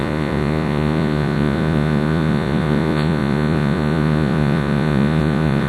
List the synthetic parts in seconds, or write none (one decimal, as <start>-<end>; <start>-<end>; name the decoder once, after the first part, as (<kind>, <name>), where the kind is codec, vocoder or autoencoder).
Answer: 0.0-5.7 (vocoder, Vocos)